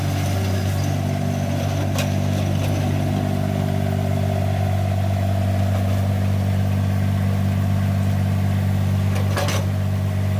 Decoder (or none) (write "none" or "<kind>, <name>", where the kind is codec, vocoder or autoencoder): none